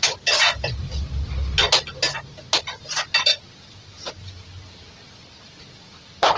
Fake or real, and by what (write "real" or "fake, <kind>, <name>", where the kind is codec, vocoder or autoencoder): real